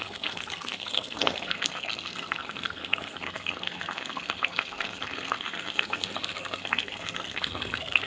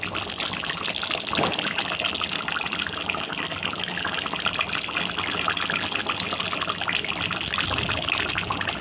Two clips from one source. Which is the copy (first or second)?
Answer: first